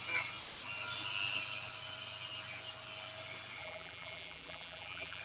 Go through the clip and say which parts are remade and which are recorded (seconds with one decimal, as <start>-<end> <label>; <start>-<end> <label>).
0.0-3.6 recorded; 3.6-5.2 remade

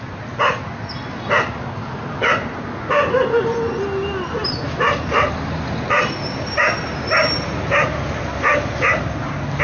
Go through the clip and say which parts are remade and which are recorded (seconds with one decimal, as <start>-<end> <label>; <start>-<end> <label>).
0.0-4.4 recorded; 4.4-6.6 remade; 6.6-9.6 recorded

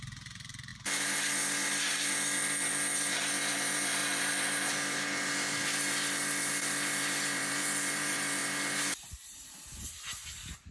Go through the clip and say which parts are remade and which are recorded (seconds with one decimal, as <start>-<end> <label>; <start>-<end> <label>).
0.0-0.7 remade; 0.7-3.5 recorded; 3.5-4.0 remade; 4.0-6.5 recorded; 6.5-8.4 remade; 8.4-9.0 recorded; 9.0-10.7 remade

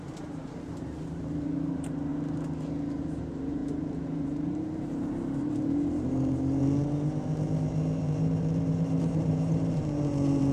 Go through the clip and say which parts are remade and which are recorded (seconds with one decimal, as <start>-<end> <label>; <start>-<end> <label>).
0.0-2.1 remade; 2.1-3.0 recorded; 3.0-10.5 remade

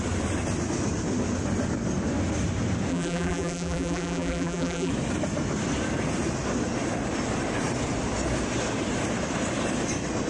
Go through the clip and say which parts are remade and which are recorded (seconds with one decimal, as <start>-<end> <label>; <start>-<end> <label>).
0.0-2.9 recorded; 2.9-4.9 remade; 4.9-10.3 recorded